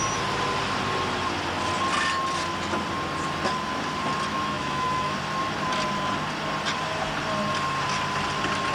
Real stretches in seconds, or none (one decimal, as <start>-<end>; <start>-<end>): 0.0-4.3; 5.2-8.7